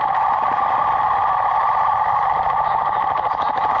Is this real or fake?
real